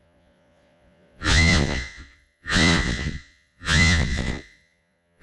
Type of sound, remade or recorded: remade